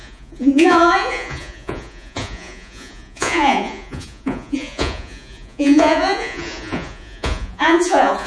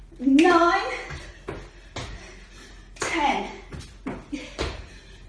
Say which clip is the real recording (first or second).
second